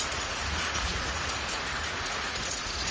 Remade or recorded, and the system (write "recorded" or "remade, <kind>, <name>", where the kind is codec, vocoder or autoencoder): remade, vocoder, Vocos